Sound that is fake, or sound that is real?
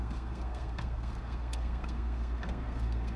fake